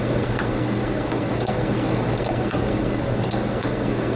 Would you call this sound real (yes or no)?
no